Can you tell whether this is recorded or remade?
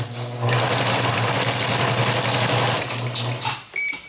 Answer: recorded